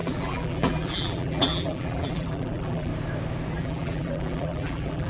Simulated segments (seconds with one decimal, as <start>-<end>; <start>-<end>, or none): 0.0-2.9; 3.5-5.1